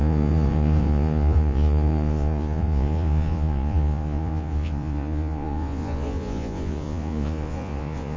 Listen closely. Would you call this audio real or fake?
fake